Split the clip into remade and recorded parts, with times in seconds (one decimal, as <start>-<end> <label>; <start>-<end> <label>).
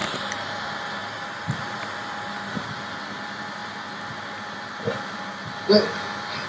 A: 0.0-0.6 remade; 0.6-1.0 recorded; 1.0-1.6 remade; 1.6-6.5 recorded